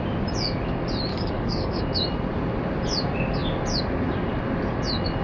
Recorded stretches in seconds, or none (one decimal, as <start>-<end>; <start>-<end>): 0.0-1.1; 1.8-5.2